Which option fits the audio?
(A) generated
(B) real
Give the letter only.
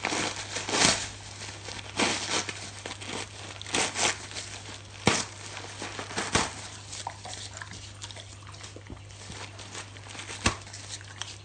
B